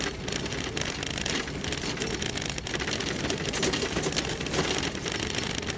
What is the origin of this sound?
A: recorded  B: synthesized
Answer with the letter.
A